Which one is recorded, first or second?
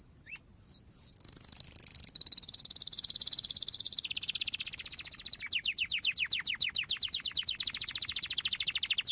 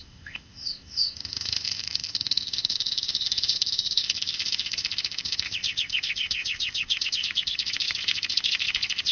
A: first